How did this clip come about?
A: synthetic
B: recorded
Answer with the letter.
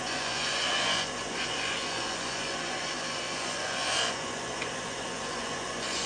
A